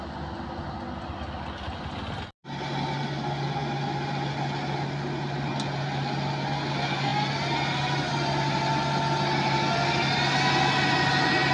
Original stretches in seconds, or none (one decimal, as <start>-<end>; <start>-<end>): 0.0-11.5